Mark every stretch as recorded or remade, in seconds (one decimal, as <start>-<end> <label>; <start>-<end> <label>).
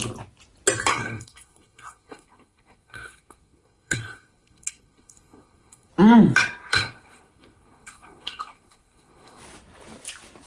0.0-0.9 recorded; 0.9-5.9 remade; 5.9-6.7 recorded; 6.7-9.4 remade; 9.4-10.5 recorded